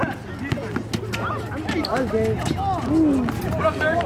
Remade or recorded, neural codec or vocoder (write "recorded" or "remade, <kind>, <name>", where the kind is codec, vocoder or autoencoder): recorded